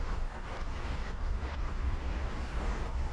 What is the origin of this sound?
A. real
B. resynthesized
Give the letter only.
B